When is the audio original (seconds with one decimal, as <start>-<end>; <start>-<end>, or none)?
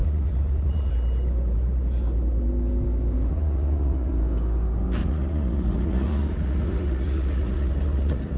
0.9-3.3; 4.1-5.0